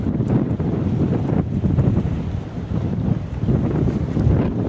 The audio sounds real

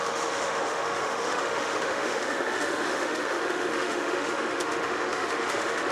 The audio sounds fake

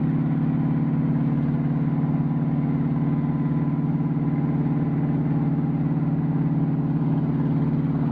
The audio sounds real